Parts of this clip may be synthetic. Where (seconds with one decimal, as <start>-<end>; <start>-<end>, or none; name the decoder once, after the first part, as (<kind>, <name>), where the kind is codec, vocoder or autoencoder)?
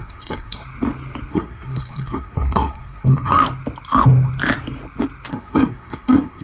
0.0-0.6 (codec, SNAC); 1.3-3.4; 5.3-6.4